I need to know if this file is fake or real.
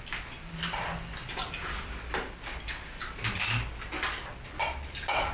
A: real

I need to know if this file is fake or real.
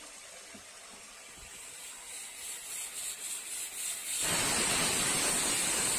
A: real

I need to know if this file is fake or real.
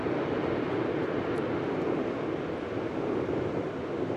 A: real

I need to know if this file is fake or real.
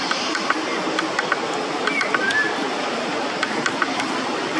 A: real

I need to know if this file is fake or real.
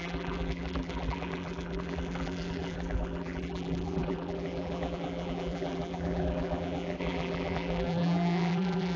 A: fake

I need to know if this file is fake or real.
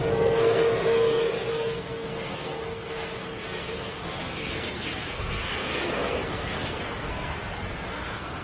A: fake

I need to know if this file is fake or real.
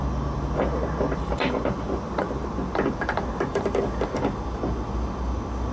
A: fake